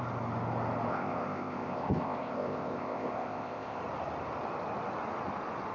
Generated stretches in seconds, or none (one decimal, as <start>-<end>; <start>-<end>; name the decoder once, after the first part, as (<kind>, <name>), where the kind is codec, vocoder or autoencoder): 0.9-3.8 (codec, ZipCodec)